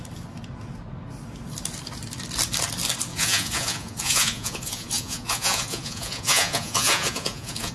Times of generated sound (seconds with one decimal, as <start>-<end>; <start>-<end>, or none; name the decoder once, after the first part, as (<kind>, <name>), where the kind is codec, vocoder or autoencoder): 3.1-7.7 (vocoder, Vocos)